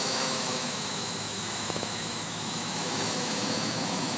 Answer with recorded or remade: remade